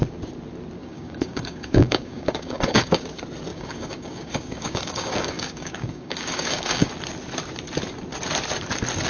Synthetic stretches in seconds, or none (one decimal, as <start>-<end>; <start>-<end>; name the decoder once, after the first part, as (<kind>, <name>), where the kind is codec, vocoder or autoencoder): 0.8-3.0 (codec, DAC); 3.5-6.9